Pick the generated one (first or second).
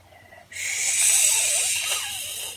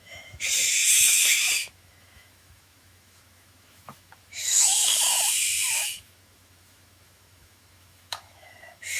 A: second